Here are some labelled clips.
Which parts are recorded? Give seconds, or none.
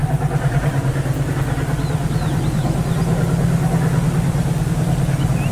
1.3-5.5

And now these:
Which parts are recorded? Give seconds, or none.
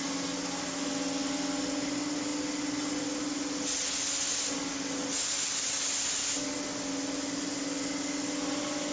0.0-8.9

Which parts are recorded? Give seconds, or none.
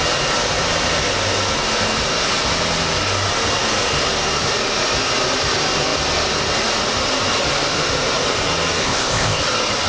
0.0-8.8; 9.4-9.9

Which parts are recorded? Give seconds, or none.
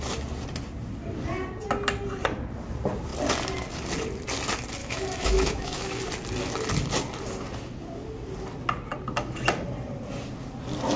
0.0-4.8; 6.1-11.0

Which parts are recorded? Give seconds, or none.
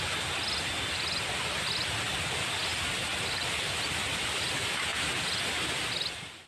0.0-6.5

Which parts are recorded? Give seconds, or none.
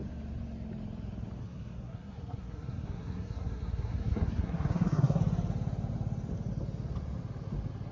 0.0-1.4; 5.2-7.9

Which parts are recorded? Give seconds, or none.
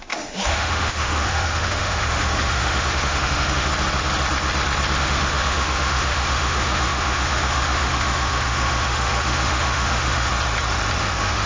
3.7-5.0; 10.3-11.0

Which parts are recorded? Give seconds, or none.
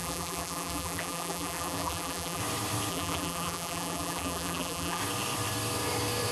2.4-2.9; 5.0-6.3